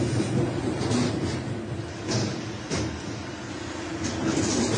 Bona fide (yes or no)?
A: yes